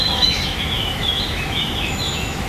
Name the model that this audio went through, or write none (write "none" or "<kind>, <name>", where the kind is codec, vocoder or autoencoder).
autoencoder, DAC-VAE